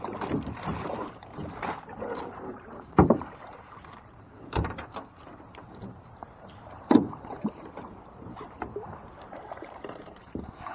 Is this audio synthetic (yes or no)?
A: yes